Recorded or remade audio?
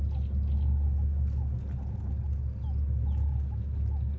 recorded